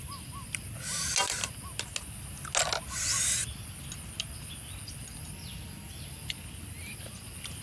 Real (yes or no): yes